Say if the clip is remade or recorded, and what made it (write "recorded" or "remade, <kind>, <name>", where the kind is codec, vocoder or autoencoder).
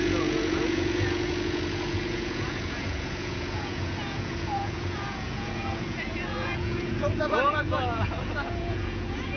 remade, vocoder, Vocos